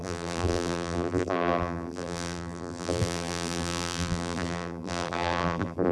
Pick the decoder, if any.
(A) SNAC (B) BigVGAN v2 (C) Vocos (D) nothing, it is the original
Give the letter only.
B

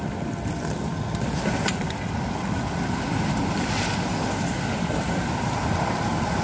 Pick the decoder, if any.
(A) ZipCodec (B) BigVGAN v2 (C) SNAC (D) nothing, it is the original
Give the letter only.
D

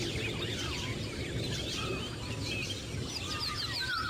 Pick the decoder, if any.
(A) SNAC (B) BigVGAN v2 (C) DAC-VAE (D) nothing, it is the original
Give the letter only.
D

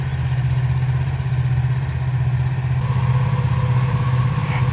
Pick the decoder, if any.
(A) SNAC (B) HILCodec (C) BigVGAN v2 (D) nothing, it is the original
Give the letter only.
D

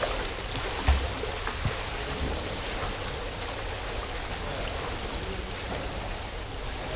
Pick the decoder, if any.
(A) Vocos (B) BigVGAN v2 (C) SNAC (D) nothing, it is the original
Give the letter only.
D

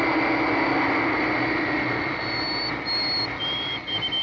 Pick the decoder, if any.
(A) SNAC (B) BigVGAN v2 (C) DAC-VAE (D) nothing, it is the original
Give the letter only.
D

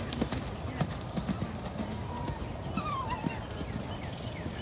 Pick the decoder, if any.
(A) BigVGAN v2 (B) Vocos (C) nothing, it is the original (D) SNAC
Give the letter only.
A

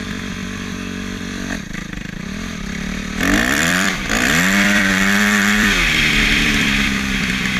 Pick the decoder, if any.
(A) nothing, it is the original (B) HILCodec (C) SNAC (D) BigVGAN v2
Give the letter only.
D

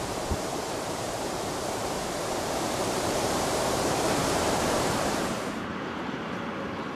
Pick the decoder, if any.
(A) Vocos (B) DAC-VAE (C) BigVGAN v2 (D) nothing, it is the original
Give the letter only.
C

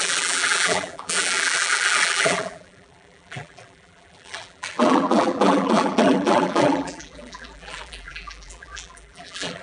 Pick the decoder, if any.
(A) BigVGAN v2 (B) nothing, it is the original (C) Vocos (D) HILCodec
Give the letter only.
A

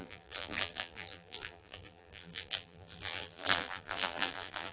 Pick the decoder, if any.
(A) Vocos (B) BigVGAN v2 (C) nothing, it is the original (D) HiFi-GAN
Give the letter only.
B